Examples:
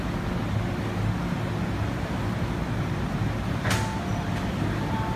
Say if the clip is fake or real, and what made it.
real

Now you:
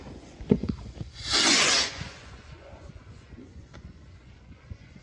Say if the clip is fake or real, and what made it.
fake, vocoder, Vocos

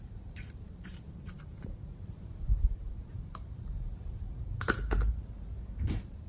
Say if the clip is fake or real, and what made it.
fake, vocoder, BigVGAN v2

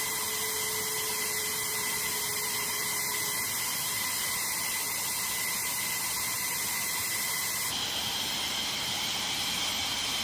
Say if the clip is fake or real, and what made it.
real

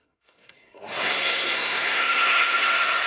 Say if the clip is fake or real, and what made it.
fake, codec, SNAC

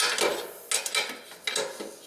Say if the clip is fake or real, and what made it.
real